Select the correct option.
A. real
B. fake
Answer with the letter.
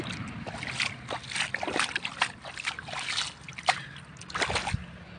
A